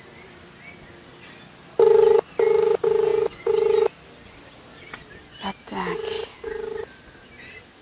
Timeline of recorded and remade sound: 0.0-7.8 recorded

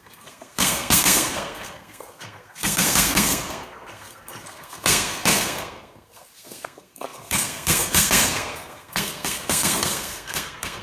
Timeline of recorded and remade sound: 0.0-10.8 remade

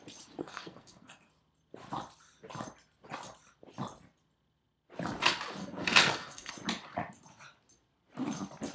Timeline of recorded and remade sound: 0.0-0.4 recorded; 0.4-1.3 remade; 1.3-5.6 recorded; 5.6-6.5 remade; 6.5-8.7 recorded

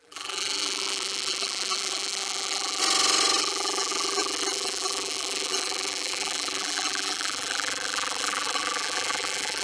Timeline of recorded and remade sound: 0.0-2.8 remade; 2.8-3.4 recorded; 3.4-9.6 remade

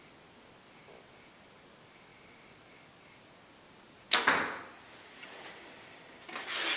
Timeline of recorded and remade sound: 0.0-6.8 recorded

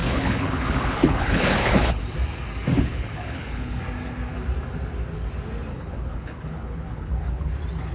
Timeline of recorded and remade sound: 0.0-2.0 remade; 2.0-2.7 recorded; 2.7-3.8 remade; 3.8-5.7 recorded; 5.7-7.5 remade; 7.5-7.9 recorded